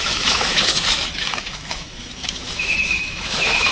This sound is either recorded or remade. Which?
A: remade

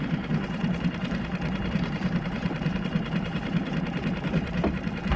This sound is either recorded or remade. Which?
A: remade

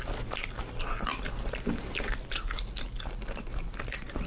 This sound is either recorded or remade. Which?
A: recorded